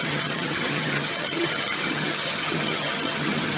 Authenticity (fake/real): fake